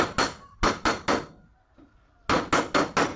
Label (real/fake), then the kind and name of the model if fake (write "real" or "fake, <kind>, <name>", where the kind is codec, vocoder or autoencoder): real